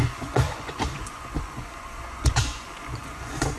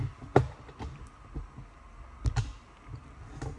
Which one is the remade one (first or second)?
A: first